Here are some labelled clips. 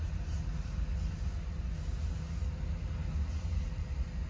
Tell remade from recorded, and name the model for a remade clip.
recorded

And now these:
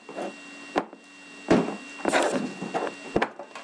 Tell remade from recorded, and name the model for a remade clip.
recorded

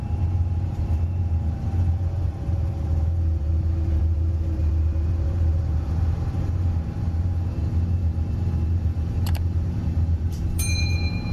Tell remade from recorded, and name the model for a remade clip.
remade, vocoder, BigVGAN v2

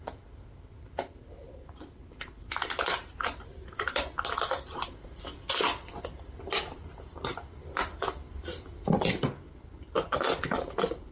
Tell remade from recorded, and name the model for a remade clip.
recorded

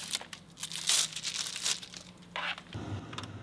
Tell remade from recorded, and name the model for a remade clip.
recorded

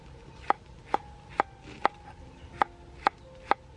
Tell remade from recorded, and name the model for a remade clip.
recorded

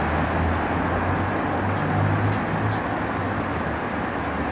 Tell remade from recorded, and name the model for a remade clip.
recorded